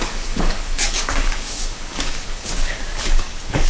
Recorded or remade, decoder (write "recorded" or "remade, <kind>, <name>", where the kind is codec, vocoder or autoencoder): remade, codec, DAC